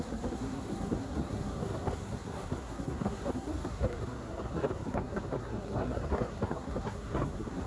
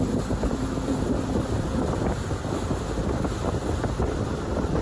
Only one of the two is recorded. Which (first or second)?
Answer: second